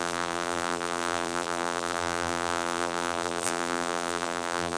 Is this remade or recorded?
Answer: remade